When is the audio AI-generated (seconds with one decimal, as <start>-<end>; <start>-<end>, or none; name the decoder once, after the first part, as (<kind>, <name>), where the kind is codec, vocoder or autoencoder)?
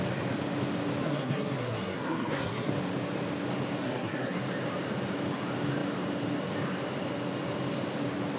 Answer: 1.0-2.7 (codec, SNAC); 3.8-4.4